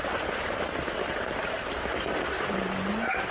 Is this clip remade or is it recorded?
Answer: recorded